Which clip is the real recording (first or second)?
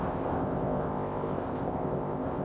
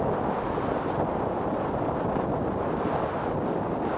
second